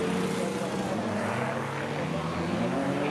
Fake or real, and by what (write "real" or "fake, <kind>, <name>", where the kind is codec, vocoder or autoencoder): real